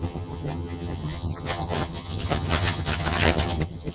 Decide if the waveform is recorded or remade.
remade